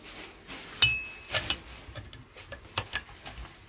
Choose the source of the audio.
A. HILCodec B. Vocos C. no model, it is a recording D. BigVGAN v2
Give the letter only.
C